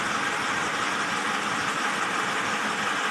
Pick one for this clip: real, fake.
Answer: real